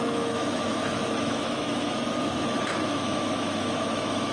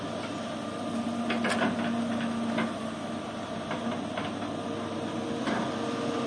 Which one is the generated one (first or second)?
first